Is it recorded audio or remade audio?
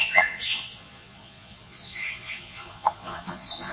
remade